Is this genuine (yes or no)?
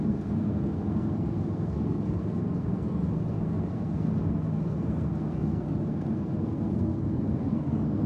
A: no